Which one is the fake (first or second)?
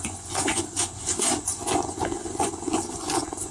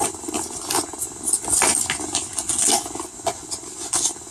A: first